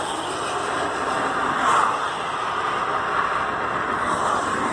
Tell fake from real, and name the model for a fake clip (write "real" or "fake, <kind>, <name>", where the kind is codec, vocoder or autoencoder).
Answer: real